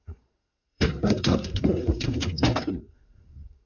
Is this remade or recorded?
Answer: remade